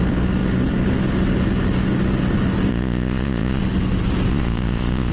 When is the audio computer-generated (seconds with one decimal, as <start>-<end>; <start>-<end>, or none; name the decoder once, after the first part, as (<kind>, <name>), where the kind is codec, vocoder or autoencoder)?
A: 2.7-3.6 (vocoder, Vocos); 4.3-5.1